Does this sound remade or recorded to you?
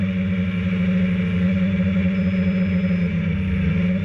recorded